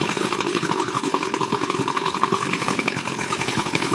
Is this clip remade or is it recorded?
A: remade